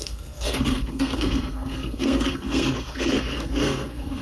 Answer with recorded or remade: remade